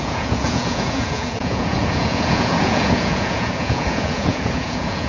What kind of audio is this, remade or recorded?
remade